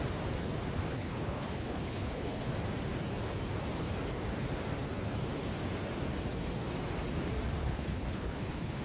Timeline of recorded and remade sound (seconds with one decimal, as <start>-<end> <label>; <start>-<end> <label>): 0.0-0.9 recorded; 0.9-2.5 remade; 2.5-7.6 recorded; 7.6-8.8 remade